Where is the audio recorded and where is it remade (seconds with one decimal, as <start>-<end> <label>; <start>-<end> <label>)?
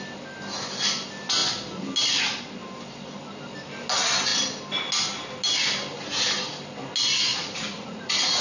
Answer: 0.0-7.3 recorded; 7.3-8.4 remade